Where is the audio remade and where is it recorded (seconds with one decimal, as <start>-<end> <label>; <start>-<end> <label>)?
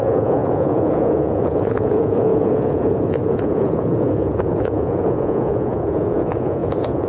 0.0-7.1 remade